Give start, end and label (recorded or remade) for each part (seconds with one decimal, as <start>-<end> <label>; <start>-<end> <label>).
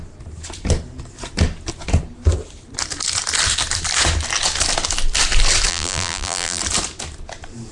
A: 0.0-5.7 recorded; 5.7-6.6 remade; 6.6-7.7 recorded